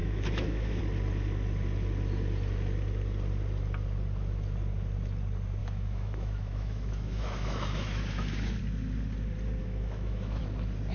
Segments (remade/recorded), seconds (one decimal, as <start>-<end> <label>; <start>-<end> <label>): 0.0-0.8 remade; 0.8-5.6 recorded; 5.6-8.6 remade; 8.6-9.6 recorded; 9.6-10.4 remade; 10.4-10.9 recorded